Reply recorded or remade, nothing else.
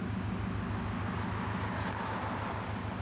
recorded